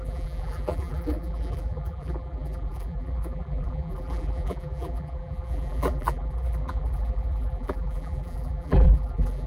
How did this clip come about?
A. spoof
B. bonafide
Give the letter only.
A